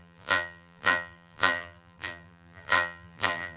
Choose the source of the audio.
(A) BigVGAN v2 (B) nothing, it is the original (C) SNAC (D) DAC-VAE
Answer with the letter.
A